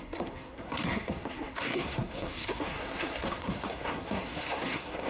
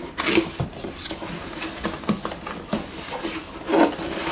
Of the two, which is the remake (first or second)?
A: first